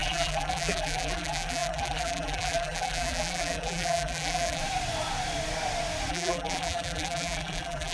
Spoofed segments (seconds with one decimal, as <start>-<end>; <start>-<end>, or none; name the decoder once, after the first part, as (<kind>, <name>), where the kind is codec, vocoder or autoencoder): 0.0-4.6 (vocoder, BigVGAN v2); 6.1-7.9